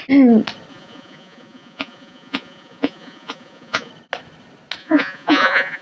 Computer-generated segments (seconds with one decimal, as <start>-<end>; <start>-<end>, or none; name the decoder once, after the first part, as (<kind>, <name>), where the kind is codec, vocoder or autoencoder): 0.7-3.9 (vocoder, Vocos); 4.8-5.8